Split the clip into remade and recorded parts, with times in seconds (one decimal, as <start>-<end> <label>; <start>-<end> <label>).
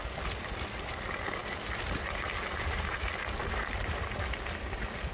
0.0-5.1 recorded